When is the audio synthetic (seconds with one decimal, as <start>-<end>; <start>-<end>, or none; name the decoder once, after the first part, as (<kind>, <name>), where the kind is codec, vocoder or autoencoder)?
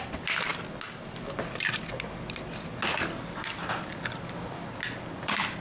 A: none